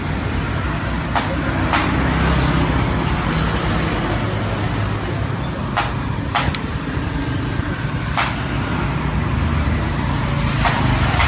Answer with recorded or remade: recorded